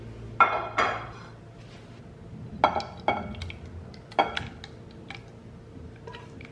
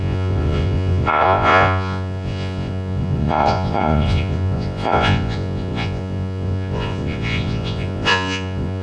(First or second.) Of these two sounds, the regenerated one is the second